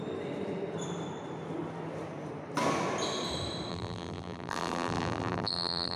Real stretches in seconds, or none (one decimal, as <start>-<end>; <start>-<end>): 0.0-3.7